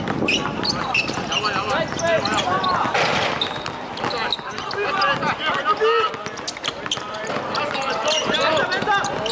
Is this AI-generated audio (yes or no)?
no